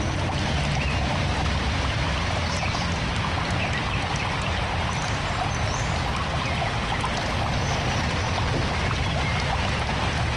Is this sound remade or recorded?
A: recorded